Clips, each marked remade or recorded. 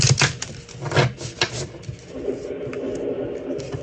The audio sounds recorded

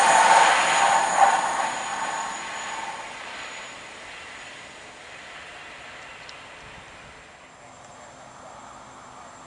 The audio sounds recorded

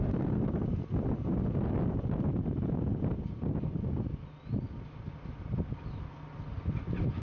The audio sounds recorded